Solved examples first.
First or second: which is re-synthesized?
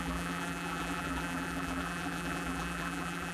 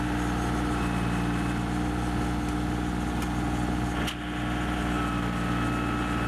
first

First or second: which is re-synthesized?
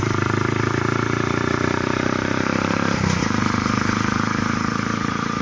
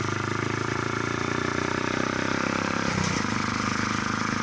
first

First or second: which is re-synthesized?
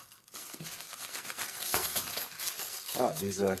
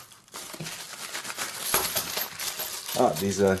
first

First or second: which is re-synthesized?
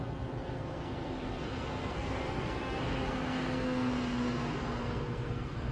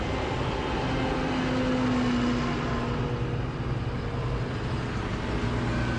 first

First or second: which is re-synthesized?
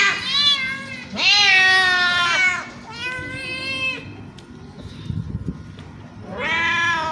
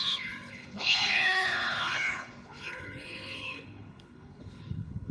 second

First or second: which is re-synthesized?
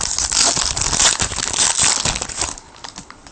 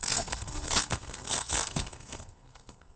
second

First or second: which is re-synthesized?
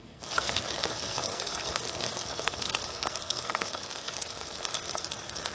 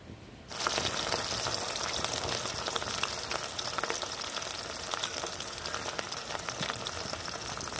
first